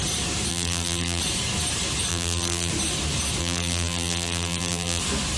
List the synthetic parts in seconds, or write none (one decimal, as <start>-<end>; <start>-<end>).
0.5-1.2; 2.1-2.7; 3.4-5.0

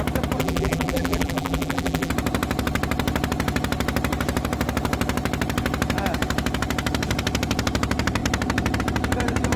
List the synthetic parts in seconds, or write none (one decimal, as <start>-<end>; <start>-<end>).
0.4-2.1